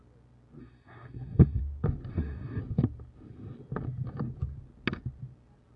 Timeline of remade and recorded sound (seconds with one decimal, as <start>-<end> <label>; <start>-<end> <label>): 0.0-0.6 recorded; 0.6-1.6 remade; 1.6-2.1 recorded; 2.1-2.6 remade; 2.6-5.8 recorded